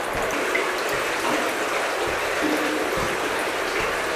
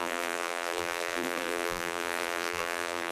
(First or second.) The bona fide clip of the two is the first